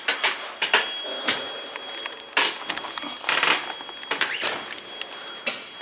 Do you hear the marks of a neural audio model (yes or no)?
no